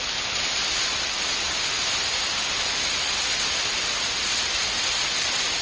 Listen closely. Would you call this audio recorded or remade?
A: recorded